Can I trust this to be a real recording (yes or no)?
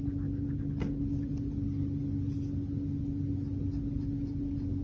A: yes